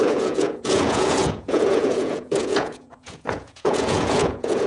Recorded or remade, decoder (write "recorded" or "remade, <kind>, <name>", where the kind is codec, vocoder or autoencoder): remade, vocoder, Vocos